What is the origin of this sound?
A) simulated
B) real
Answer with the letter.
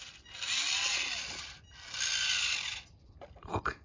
B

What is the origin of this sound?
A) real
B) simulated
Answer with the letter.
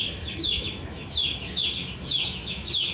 B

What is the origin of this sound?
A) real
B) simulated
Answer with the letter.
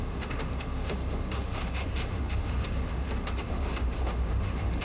B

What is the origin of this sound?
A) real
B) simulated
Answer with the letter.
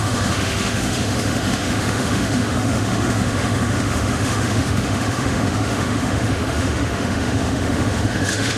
B